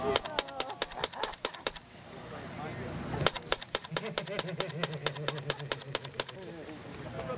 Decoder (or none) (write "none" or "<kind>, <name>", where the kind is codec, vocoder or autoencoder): vocoder, BigVGAN v2